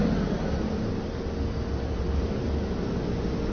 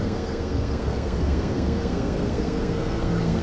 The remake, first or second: second